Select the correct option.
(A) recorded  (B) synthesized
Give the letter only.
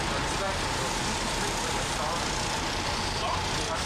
A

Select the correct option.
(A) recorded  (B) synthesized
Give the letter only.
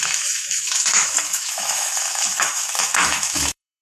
B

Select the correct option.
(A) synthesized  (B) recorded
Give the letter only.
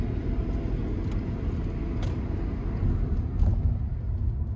B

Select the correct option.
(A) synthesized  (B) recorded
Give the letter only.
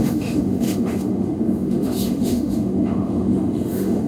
A